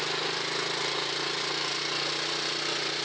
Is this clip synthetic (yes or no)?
no